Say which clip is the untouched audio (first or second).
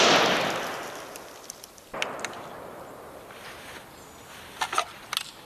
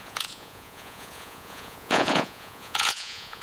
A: first